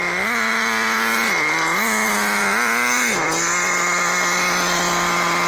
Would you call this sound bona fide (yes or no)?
yes